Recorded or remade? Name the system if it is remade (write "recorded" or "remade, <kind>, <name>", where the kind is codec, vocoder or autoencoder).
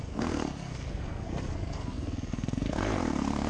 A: remade, codec, SNAC